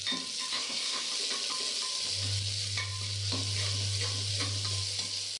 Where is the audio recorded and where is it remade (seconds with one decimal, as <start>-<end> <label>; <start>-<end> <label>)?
0.0-0.5 recorded; 0.5-1.1 remade; 1.1-5.4 recorded